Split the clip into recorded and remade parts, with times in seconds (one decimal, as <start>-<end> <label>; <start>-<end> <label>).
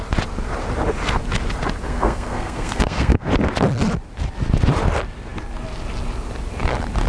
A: 0.0-1.9 recorded; 1.9-3.3 remade; 3.3-7.1 recorded